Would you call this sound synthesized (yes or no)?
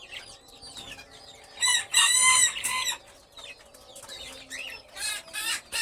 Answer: no